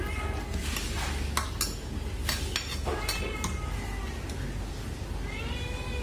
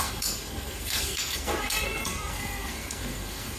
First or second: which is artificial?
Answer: second